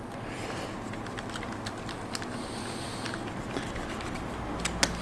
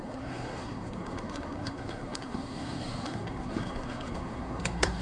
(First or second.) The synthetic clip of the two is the second